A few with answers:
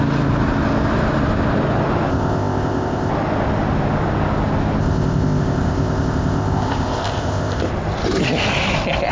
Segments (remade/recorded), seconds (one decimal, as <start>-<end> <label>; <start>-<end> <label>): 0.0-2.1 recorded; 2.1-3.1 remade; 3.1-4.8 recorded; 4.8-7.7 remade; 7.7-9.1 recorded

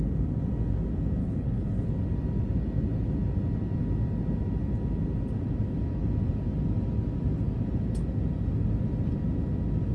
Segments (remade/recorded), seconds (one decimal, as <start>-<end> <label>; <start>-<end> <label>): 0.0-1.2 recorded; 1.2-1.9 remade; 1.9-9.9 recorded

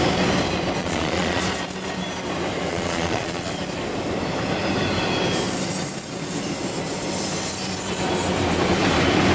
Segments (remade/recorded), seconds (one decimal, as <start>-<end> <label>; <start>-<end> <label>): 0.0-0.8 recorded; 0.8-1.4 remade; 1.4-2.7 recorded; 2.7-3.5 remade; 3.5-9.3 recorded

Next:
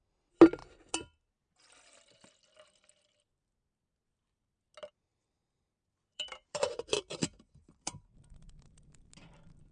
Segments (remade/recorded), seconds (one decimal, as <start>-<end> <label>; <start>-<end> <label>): 0.0-5.1 recorded; 5.1-9.1 remade; 9.1-9.7 recorded

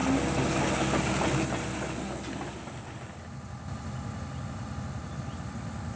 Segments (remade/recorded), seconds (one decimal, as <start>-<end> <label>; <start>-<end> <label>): 0.0-6.0 recorded

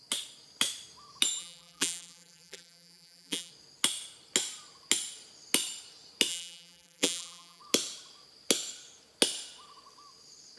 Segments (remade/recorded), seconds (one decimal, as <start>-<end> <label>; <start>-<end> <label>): 0.0-1.4 recorded; 1.4-3.5 remade; 3.5-6.3 recorded; 6.3-7.6 remade; 7.6-10.6 recorded